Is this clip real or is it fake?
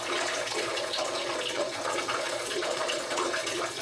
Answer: fake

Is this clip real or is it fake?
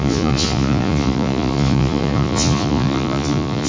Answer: fake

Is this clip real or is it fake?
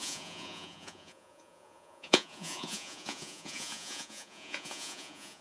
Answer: fake